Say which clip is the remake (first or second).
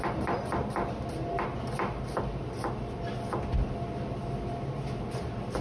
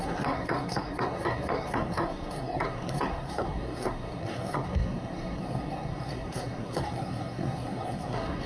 second